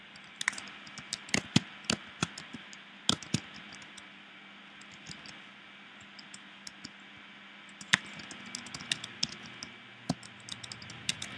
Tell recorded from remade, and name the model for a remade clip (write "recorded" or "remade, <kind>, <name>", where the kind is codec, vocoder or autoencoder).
recorded